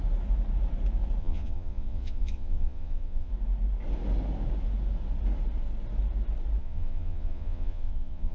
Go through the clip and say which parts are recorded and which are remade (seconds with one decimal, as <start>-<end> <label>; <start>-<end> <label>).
0.0-1.2 recorded; 1.2-3.3 remade; 3.3-6.6 recorded; 6.6-8.3 remade